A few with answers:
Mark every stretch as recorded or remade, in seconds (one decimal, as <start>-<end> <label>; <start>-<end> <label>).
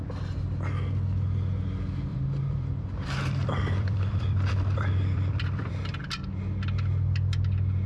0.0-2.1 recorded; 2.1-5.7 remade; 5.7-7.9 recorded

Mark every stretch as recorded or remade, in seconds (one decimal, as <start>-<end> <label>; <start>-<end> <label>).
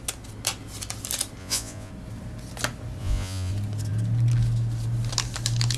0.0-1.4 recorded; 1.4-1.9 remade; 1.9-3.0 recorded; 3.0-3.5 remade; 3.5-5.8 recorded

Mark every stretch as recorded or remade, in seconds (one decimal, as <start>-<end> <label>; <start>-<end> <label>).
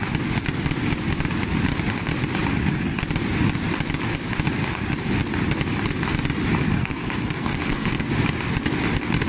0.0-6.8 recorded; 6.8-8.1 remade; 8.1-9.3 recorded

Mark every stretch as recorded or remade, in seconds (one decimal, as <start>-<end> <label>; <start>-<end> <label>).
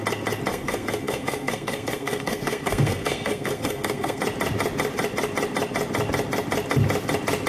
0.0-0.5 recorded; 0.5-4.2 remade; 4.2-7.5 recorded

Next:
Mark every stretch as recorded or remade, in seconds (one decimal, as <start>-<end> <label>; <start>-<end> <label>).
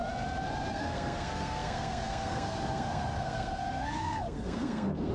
0.0-0.7 recorded; 0.7-5.1 remade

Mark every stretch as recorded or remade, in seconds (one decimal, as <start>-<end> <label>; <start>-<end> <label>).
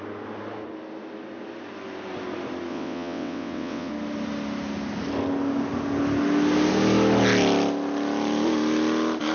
0.0-2.7 recorded; 2.7-3.9 remade; 3.9-9.3 recorded